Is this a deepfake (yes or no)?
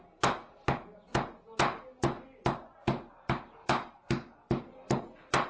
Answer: no